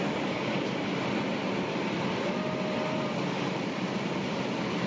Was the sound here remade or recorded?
recorded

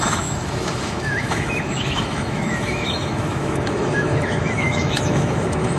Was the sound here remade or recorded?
remade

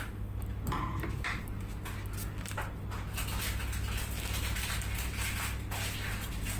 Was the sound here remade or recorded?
recorded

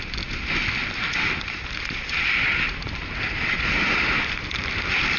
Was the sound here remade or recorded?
recorded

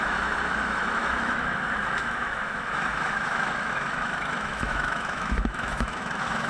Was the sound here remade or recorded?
remade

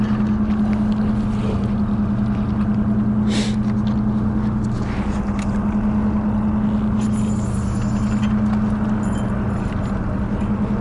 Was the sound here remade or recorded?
recorded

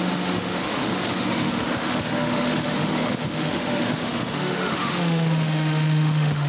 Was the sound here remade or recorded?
remade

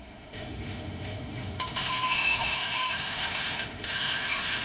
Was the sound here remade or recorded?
remade